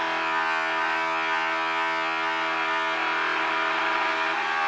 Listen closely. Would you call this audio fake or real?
real